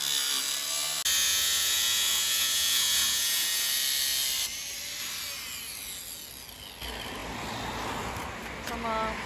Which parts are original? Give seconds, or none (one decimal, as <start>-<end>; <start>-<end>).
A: 0.0-1.3; 3.7-9.3